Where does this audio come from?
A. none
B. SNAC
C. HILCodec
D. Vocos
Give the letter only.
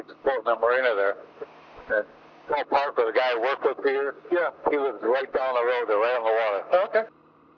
A